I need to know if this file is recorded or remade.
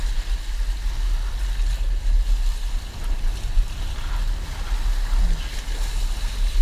recorded